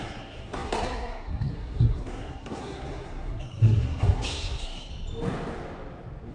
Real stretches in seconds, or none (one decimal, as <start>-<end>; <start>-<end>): 4.9-6.3